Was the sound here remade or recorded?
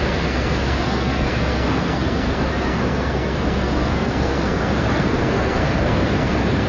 remade